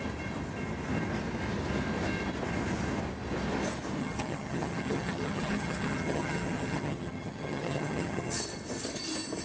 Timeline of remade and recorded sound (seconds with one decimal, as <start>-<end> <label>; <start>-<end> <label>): 0.0-4.0 recorded; 4.0-8.4 remade; 8.4-9.4 recorded